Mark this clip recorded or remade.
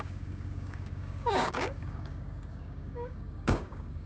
remade